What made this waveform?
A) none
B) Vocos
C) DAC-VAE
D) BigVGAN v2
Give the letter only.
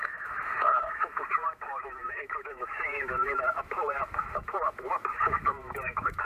C